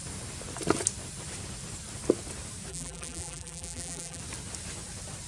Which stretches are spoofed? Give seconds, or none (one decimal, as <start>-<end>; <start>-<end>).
2.7-4.2